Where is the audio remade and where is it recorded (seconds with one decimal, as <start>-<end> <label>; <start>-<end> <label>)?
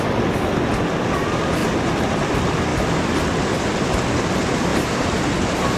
0.0-2.7 recorded; 2.7-3.2 remade; 3.2-4.7 recorded; 4.7-5.8 remade